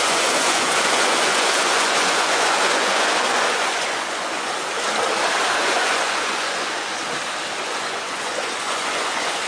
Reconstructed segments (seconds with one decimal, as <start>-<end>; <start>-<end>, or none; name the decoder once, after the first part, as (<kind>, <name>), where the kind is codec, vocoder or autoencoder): 0.0-4.5 (vocoder, Vocos); 5.6-7.0; 7.6-9.5